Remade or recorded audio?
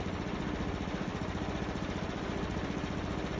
recorded